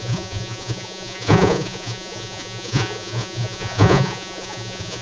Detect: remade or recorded remade